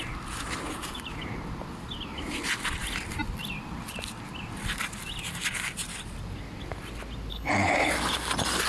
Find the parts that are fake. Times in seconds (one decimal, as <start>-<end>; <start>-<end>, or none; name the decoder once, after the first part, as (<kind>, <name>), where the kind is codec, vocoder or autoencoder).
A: 7.3-7.9 (codec, HILCodec)